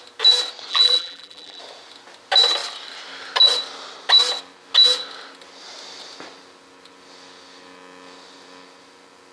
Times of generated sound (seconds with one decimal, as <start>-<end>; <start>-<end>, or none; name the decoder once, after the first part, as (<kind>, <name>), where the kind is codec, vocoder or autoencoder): 0.7-1.6 (vocoder, BigVGAN v2)